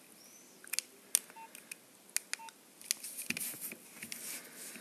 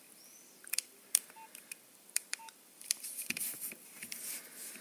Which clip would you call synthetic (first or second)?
second